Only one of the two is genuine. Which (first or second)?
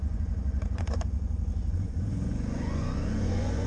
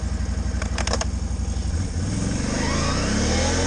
second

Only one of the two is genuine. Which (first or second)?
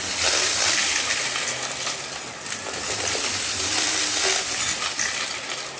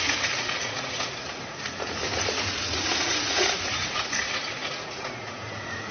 first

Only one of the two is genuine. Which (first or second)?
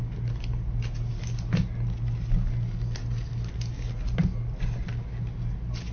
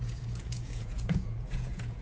first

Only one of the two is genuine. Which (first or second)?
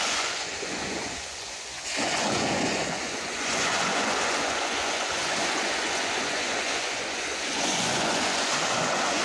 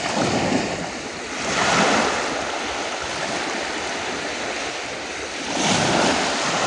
second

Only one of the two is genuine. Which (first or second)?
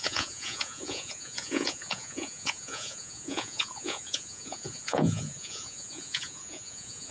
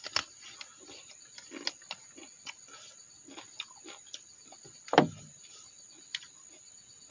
second